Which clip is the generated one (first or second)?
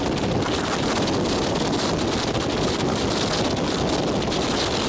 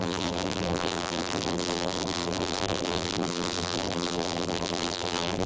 second